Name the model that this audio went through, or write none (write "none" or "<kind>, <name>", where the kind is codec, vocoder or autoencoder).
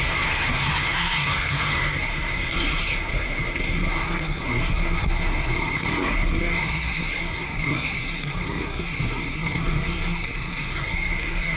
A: codec, SNAC